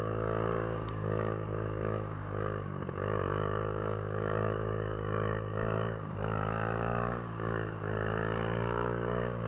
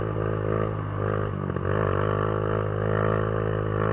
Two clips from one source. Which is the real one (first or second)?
second